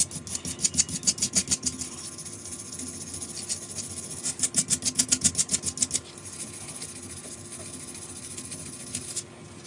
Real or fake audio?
real